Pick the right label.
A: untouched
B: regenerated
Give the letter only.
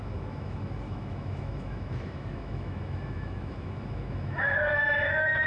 B